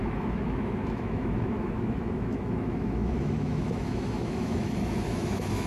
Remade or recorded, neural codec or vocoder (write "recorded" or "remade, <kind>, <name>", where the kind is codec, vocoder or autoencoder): remade, autoencoder, DAC-VAE